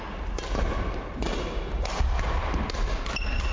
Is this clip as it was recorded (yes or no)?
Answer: yes